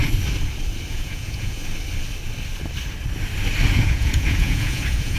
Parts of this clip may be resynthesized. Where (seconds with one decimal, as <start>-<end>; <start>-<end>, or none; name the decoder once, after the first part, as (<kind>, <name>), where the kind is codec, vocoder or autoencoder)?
0.9-1.6 (vocoder, Vocos); 3.7-5.2